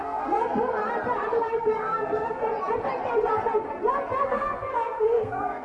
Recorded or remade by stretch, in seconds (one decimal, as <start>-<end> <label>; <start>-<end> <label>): 0.0-0.8 remade; 0.8-1.4 recorded; 1.4-2.4 remade; 2.4-4.2 recorded; 4.2-5.6 remade